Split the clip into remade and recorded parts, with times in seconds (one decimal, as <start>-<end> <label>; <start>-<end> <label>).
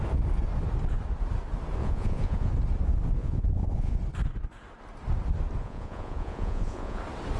0.0-1.8 recorded; 1.8-2.5 remade; 2.5-3.2 recorded; 3.2-4.0 remade; 4.0-5.6 recorded; 5.6-7.0 remade; 7.0-7.4 recorded